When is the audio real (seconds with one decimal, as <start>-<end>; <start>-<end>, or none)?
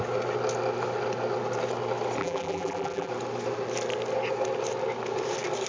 0.0-2.2; 3.1-5.7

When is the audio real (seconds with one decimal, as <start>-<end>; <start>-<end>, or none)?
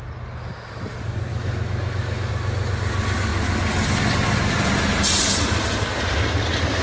0.0-1.3; 2.3-6.8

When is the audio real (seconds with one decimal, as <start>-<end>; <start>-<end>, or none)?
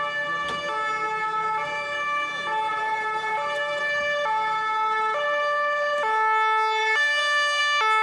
0.0-2.7; 3.8-6.8; 7.6-8.0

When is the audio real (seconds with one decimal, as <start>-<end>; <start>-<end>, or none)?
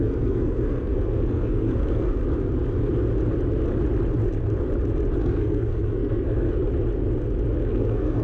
2.2-5.2; 6.6-7.7